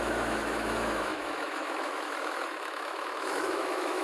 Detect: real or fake fake